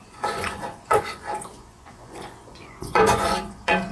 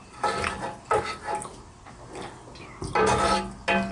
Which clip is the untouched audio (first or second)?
second